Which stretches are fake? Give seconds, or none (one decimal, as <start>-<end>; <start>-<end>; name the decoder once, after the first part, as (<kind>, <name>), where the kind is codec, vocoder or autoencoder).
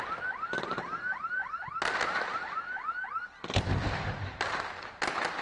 none